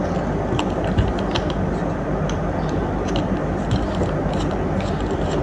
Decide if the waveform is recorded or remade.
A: recorded